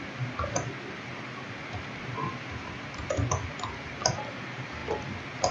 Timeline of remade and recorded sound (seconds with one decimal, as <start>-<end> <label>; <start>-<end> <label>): 0.0-5.5 recorded